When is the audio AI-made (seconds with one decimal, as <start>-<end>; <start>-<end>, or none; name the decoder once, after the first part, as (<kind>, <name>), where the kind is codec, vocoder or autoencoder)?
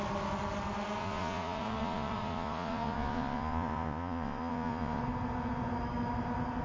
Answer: 1.0-5.0 (vocoder, Vocos)